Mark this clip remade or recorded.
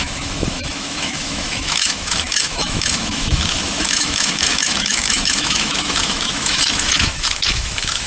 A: remade